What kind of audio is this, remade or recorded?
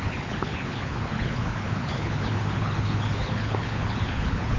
remade